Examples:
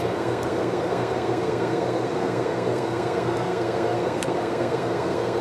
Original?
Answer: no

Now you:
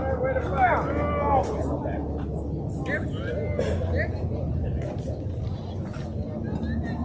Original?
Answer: yes